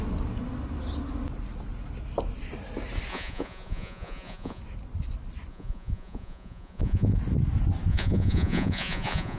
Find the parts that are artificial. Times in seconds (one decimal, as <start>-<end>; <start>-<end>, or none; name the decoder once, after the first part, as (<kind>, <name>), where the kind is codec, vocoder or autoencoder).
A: 3.1-4.6 (vocoder, Vocos); 5.5-7.2; 7.9-9.4